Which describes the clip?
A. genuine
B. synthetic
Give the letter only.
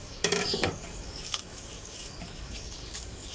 B